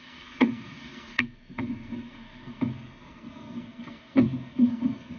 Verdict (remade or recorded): remade